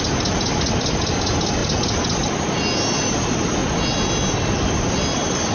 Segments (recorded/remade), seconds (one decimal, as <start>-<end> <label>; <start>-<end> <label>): 0.0-5.5 recorded